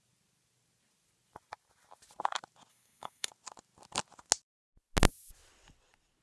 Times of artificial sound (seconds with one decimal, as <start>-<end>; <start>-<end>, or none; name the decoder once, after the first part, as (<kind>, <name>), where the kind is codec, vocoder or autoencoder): 2.7-3.3 (codec, SNAC)